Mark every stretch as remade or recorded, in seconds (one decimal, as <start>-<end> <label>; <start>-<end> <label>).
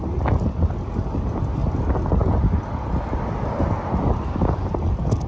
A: 0.0-5.3 recorded